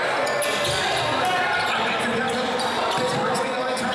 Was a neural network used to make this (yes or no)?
no